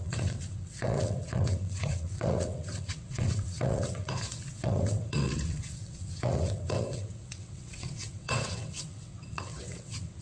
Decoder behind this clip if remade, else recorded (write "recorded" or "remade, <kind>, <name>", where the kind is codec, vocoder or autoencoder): remade, vocoder, WaveNeXt